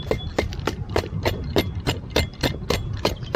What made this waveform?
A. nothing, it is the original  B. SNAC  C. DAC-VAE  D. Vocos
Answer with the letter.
A